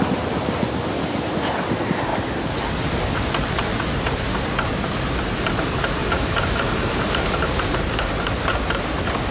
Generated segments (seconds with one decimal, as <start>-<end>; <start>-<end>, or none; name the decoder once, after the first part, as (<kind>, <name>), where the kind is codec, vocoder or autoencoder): 6.0-8.1 (vocoder, BigVGAN v2)